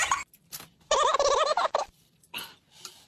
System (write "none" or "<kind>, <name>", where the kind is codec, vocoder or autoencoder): none